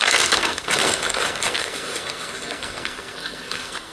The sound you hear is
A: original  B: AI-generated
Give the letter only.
B